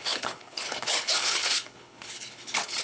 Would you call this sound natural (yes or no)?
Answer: no